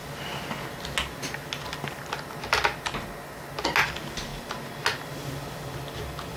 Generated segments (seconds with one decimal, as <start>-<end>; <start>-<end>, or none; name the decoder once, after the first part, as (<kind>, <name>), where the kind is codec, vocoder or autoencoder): none